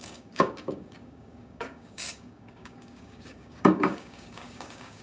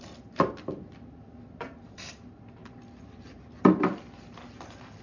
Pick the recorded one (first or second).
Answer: second